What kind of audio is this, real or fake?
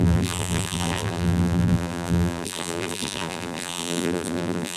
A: fake